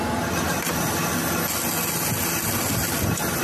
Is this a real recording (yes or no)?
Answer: yes